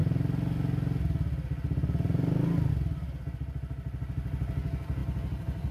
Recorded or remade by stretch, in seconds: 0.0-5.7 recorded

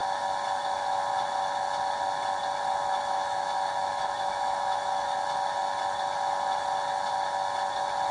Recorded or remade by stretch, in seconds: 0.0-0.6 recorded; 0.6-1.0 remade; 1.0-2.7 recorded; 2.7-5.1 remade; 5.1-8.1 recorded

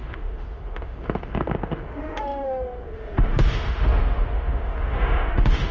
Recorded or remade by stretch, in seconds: 0.0-5.7 remade